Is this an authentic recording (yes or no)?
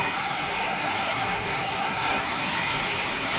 no